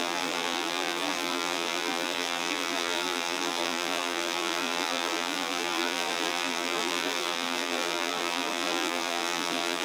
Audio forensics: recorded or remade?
remade